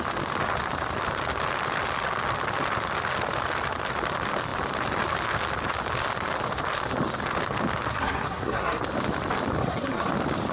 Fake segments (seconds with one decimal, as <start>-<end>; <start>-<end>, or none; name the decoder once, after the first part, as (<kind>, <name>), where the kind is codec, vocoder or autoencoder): 7.9-8.8 (codec, SNAC); 9.6-10.1